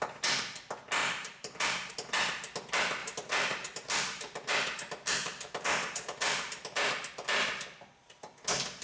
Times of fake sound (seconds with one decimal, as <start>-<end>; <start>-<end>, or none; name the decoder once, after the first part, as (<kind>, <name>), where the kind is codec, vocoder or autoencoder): 1.0-1.9 (vocoder, BigVGAN v2); 3.0-6.9